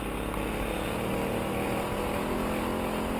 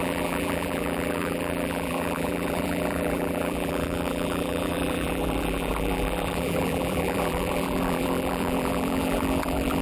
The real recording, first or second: first